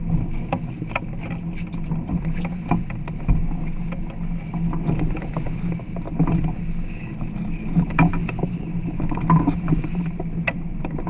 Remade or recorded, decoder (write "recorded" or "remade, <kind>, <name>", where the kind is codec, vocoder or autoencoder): recorded